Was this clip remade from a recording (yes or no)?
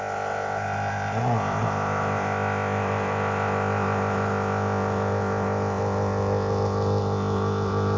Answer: yes